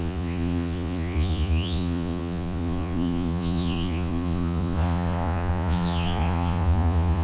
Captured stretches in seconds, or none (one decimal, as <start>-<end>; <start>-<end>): none